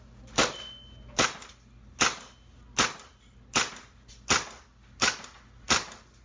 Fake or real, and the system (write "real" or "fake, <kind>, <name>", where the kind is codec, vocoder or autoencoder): real